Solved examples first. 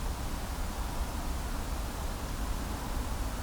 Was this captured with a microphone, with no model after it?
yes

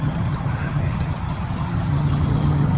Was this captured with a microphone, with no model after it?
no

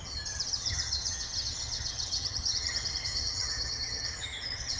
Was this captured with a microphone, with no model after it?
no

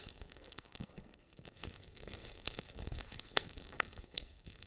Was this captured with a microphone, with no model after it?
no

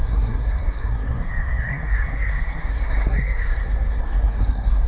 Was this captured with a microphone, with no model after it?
no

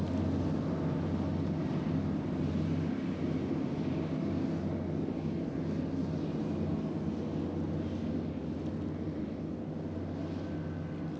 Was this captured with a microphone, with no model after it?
yes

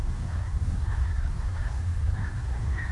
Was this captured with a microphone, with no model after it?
no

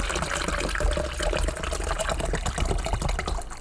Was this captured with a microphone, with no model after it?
yes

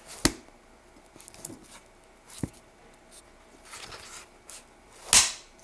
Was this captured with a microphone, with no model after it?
yes